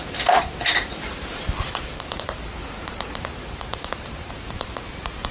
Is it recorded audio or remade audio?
remade